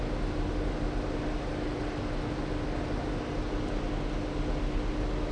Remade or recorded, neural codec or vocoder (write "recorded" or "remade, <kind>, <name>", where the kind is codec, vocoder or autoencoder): recorded